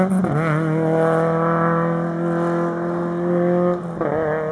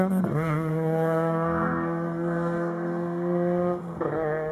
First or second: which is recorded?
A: first